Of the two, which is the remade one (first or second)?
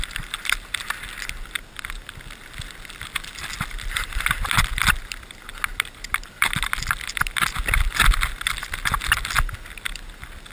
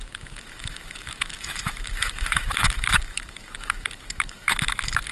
second